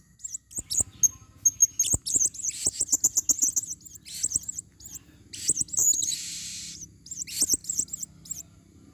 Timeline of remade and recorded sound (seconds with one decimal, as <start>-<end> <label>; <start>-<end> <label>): 0.0-8.9 recorded